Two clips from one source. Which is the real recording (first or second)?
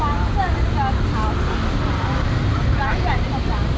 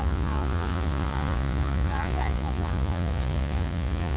first